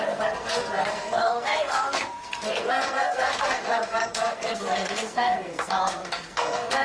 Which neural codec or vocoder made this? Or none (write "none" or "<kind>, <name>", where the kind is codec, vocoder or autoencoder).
codec, SNAC